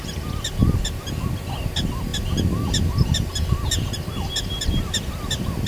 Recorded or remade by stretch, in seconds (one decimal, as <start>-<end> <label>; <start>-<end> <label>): 0.0-5.7 recorded